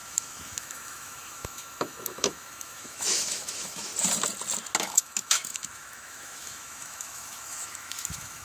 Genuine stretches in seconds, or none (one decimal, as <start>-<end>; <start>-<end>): 3.9-4.8